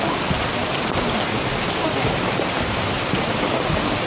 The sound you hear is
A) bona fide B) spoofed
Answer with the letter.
A